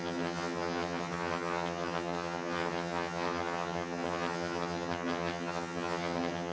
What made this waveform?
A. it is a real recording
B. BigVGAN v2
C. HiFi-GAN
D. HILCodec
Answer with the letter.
C